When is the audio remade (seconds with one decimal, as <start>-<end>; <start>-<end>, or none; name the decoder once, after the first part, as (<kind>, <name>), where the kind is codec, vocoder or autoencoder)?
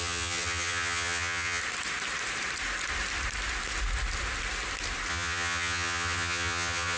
0.0-1.6 (vocoder, HiFi-GAN); 5.1-7.0